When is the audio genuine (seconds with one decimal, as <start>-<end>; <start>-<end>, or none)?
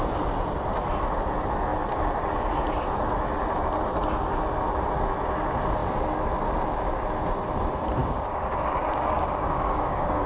0.0-8.0